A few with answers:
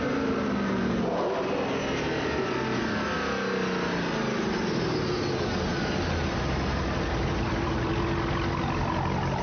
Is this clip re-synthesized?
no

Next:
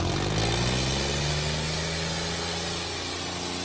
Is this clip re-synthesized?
no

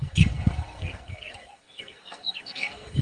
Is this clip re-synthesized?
yes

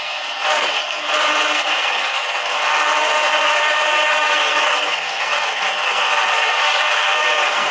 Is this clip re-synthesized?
yes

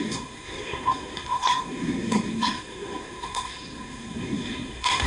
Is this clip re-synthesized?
yes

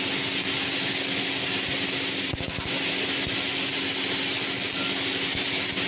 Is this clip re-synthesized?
no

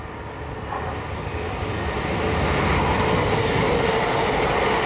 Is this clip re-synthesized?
no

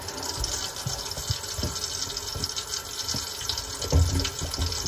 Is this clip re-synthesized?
no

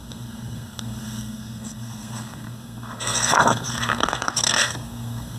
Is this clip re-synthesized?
yes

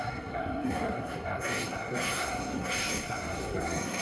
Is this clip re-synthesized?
yes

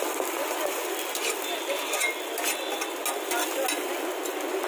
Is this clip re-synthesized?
no